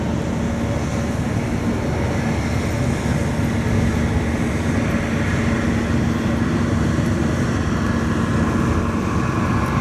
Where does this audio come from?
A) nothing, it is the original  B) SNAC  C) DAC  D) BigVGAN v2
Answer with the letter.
A